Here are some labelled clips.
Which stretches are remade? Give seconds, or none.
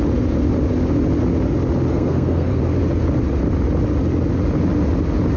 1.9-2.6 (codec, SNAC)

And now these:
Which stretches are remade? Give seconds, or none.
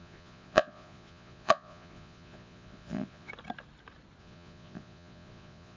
0.0-3.3 (vocoder, Vocos); 4.2-5.8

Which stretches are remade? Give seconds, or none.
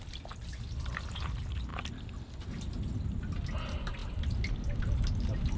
none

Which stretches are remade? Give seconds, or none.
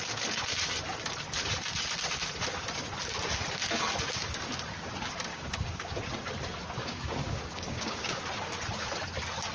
5.3-5.9 (codec, DAC); 6.8-8.2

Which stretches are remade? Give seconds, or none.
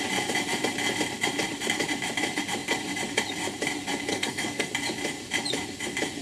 4.1-4.7 (codec, SNAC)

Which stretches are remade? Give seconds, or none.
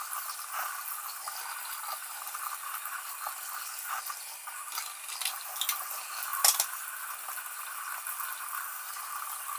none